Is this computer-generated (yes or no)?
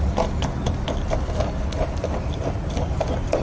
no